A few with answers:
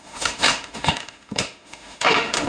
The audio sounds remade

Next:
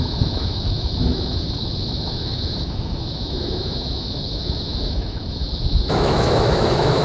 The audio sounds remade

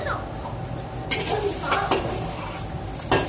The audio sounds recorded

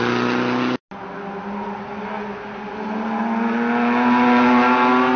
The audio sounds recorded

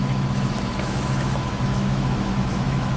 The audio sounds remade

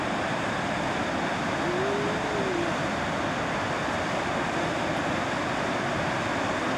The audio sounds recorded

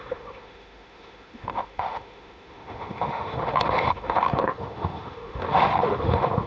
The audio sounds remade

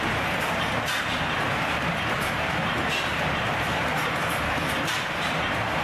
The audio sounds recorded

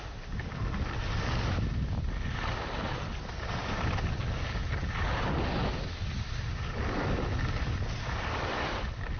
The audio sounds recorded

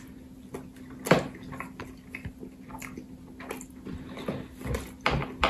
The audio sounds recorded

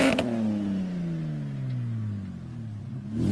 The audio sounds recorded